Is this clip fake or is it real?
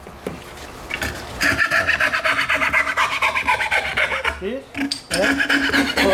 real